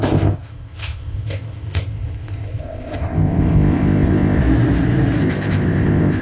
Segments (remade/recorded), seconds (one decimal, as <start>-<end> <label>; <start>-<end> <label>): 0.0-4.4 remade; 4.4-5.2 recorded; 5.2-6.2 remade